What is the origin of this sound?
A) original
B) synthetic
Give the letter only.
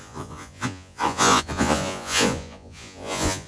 B